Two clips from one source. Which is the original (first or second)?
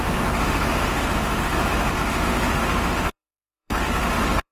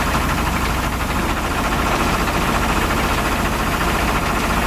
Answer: second